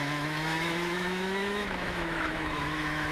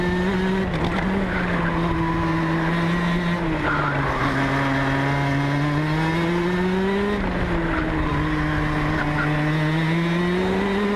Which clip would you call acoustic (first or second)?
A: second